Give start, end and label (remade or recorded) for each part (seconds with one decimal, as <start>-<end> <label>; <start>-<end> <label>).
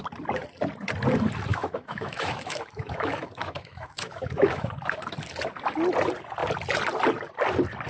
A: 0.0-1.5 recorded; 1.5-4.7 remade; 4.7-7.9 recorded